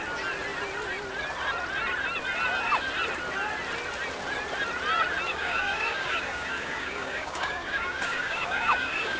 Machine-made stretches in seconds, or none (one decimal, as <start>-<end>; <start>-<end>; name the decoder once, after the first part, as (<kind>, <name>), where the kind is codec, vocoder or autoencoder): 5.3-9.2 (codec, DAC)